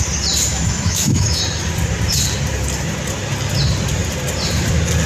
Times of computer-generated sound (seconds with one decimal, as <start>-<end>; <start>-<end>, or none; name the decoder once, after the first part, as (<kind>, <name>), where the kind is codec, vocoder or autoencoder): 0.5-1.4 (autoencoder, DAC-VAE)